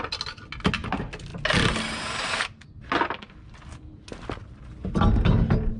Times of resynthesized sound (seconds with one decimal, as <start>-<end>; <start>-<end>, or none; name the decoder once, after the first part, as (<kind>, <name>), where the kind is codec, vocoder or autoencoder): none